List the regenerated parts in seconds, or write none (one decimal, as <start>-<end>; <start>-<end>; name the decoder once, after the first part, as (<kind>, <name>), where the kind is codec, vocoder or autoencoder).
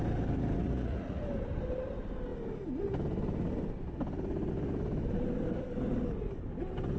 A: 0.6-1.2 (vocoder, Vocos)